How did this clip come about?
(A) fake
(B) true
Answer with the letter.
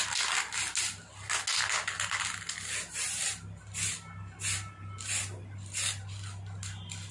B